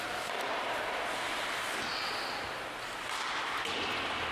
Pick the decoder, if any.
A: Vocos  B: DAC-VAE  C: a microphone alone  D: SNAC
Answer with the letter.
C